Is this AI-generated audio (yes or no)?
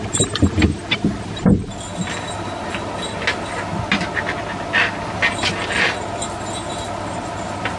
no